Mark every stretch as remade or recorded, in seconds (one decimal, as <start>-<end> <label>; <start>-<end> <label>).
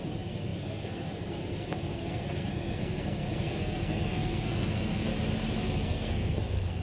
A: 0.0-5.1 remade; 5.1-5.6 recorded; 5.6-6.8 remade